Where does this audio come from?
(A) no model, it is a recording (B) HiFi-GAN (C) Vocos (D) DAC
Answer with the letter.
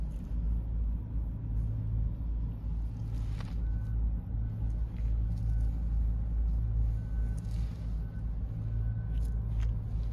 A